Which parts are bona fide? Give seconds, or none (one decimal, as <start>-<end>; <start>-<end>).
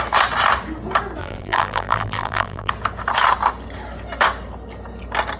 0.0-1.2; 2.7-5.4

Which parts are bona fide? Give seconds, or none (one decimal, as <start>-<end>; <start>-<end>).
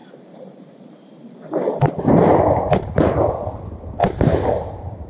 3.1-4.0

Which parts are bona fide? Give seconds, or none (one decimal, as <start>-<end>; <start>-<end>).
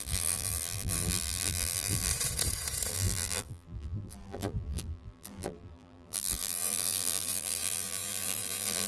2.1-2.9